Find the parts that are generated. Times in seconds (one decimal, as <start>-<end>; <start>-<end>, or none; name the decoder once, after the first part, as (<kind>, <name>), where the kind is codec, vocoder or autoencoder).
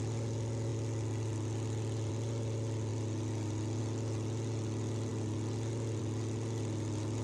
none